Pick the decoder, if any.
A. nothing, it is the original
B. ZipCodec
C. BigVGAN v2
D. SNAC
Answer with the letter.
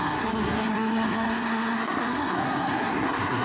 D